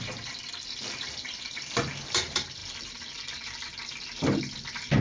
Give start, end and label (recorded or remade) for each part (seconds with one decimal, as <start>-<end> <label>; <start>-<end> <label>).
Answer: 0.0-5.0 recorded